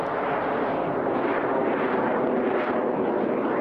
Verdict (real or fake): real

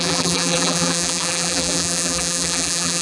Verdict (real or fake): fake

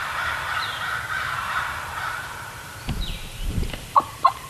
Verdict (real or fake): fake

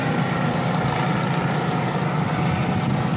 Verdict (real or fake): real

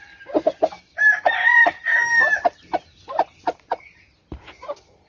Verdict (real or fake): real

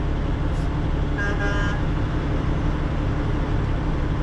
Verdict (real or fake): real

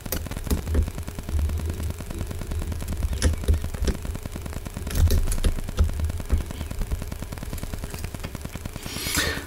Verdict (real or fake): fake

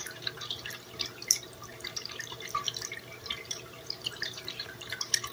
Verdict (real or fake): fake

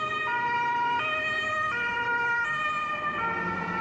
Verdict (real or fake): real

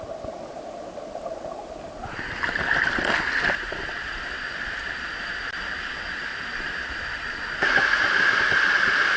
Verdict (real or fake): real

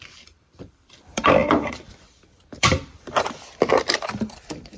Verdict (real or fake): fake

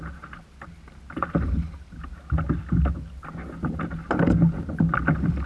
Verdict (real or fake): real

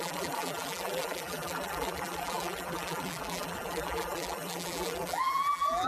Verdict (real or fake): fake